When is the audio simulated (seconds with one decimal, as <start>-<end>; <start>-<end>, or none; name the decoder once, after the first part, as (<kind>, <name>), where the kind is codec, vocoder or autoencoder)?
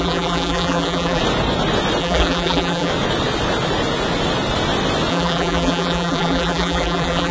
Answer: 0.0-1.2 (vocoder, BigVGAN v2); 2.0-2.9; 5.1-7.3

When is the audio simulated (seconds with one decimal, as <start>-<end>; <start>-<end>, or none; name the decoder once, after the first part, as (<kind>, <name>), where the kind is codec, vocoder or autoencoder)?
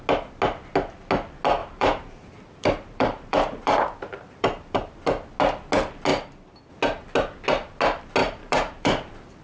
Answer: 1.6-4.9 (vocoder, BigVGAN v2); 8.2-9.4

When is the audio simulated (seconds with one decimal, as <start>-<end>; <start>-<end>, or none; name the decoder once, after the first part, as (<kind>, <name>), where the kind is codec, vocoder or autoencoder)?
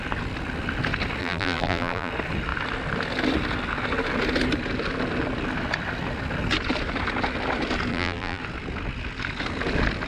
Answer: 1.2-2.1 (vocoder, BigVGAN v2); 7.9-8.4